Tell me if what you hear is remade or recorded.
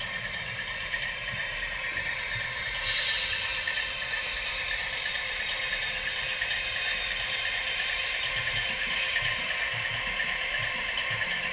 remade